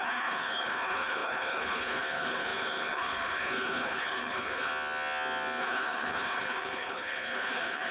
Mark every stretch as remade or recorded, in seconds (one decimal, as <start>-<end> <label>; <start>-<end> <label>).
0.0-4.7 remade; 4.7-5.6 recorded; 5.6-7.9 remade